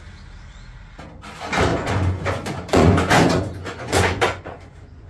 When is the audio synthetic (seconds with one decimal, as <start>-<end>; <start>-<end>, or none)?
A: 1.7-5.1